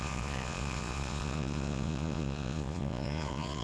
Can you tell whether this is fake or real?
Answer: fake